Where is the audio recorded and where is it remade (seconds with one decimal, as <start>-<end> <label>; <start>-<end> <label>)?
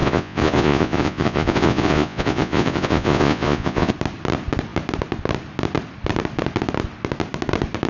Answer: 0.0-3.9 remade; 3.9-7.9 recorded